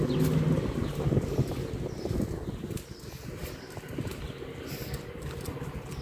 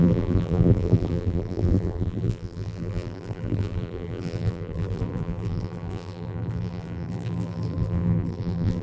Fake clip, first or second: second